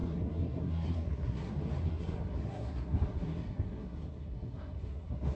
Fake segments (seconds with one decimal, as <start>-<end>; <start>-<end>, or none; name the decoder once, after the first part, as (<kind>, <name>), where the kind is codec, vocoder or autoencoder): 0.0-1.5 (codec, SNAC); 1.9-5.4